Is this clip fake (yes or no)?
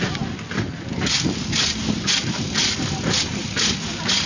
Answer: no